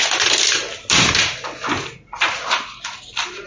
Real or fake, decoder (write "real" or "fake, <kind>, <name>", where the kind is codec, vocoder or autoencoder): real